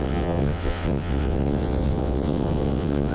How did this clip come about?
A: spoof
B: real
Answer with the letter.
A